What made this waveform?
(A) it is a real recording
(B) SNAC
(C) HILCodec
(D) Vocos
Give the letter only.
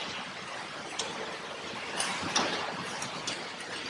A